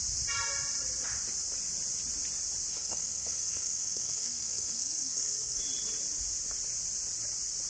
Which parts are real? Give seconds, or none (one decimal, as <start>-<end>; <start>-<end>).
0.0-2.7; 5.6-7.7